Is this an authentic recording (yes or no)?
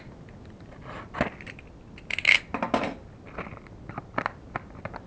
yes